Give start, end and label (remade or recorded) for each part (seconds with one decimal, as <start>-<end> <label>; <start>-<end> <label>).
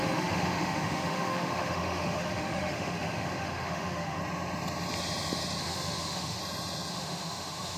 0.0-4.2 remade; 4.2-5.6 recorded; 5.6-6.4 remade; 6.4-6.9 recorded; 6.9-7.8 remade